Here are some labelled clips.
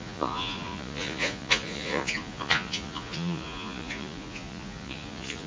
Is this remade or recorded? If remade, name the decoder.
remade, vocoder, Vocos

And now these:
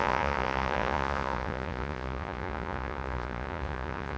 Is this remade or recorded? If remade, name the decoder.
remade, vocoder, Vocos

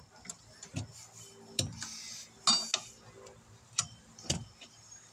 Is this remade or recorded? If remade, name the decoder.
recorded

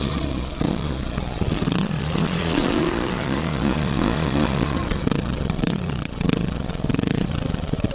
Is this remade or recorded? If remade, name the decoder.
remade, vocoder, Vocos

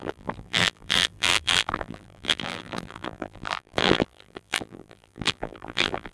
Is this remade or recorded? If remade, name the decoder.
remade, vocoder, BigVGAN v2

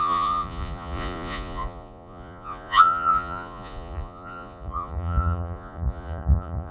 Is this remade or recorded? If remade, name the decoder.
remade, vocoder, Vocos